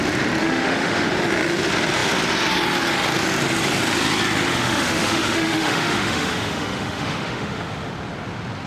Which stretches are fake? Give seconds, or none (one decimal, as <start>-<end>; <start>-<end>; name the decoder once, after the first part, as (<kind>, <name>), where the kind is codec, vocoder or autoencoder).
0.4-1.1 (autoencoder, DAC-VAE); 4.5-7.9